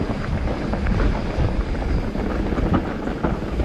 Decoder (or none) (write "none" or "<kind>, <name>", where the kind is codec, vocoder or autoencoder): none